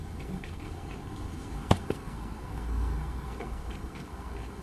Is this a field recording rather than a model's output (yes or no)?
no